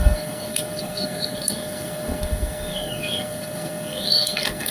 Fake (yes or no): yes